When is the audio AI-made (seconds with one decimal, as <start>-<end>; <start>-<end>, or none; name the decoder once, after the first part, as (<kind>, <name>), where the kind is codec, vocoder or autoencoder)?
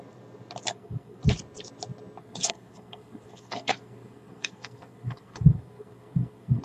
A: 0.7-1.2 (codec, SNAC); 2.2-6.6